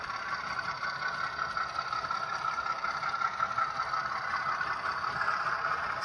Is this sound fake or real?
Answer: real